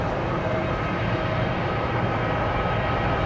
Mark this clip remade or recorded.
recorded